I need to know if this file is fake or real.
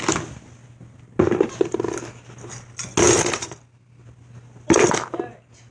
real